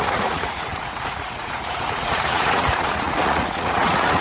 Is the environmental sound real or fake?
fake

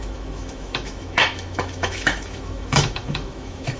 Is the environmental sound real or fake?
fake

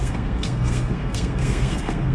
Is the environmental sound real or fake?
fake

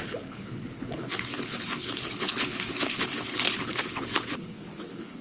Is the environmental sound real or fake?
fake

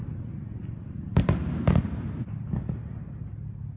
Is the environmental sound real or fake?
real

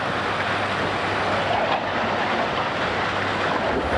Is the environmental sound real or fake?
real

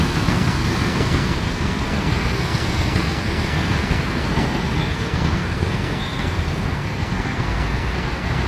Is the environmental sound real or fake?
fake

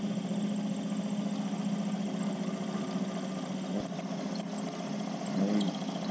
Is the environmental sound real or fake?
real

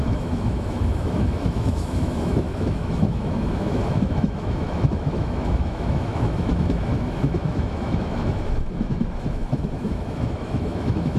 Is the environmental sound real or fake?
fake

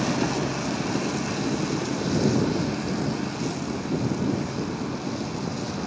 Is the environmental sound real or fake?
real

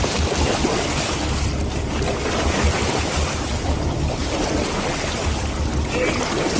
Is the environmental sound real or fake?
real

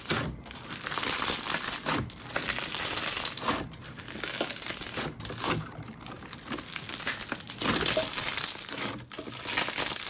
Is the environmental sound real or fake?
real